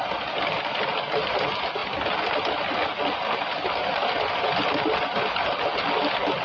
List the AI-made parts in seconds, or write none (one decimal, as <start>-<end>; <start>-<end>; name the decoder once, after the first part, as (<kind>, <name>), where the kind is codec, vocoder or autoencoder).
none